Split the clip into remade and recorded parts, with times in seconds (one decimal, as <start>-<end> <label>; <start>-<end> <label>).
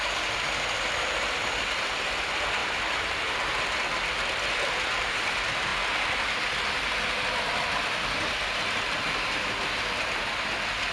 0.0-2.6 recorded; 2.6-3.5 remade; 3.5-10.9 recorded